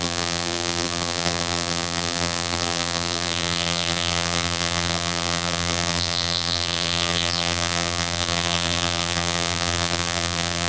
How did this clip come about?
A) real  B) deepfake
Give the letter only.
B